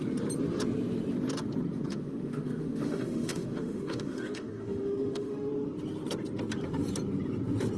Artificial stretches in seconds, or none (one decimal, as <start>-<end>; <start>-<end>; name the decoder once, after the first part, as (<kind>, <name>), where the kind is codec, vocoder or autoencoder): 1.9-5.5 (autoencoder, DAC-VAE)

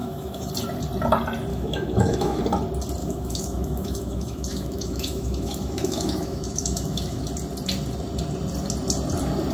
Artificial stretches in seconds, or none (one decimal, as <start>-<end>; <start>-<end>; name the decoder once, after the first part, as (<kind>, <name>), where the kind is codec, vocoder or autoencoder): 0.0-0.5 (autoencoder, DAC-VAE); 1.5-2.4; 3.0-7.2